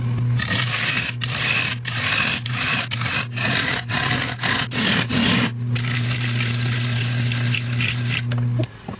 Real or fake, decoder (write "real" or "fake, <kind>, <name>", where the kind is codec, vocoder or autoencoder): real